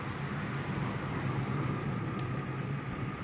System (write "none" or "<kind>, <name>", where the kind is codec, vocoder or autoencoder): none